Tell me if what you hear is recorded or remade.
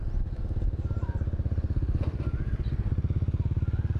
recorded